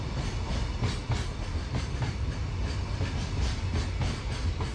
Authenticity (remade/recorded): recorded